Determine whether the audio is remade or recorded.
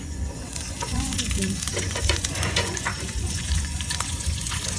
remade